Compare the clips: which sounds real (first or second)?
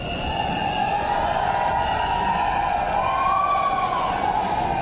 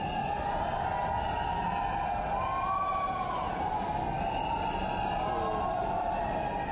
second